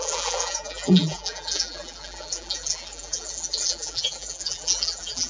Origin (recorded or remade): remade